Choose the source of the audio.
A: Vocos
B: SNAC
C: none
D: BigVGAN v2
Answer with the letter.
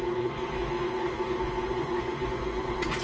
A